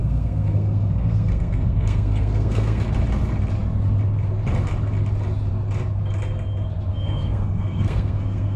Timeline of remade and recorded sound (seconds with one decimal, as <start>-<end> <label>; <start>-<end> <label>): 0.0-2.8 remade; 2.8-6.9 recorded; 6.9-8.6 remade